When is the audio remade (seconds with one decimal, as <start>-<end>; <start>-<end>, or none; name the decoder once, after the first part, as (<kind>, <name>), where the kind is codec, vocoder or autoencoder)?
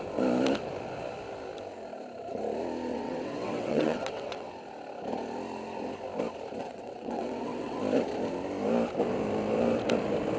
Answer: 2.9-4.5 (vocoder, WaveNeXt); 6.6-7.8